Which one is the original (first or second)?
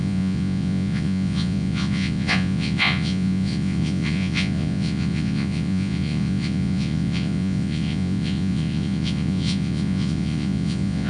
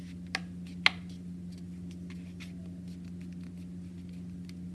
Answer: second